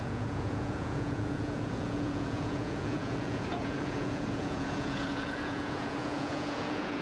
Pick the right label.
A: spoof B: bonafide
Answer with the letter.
A